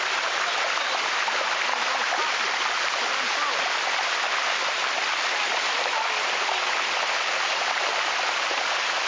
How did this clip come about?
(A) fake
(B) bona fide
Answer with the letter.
B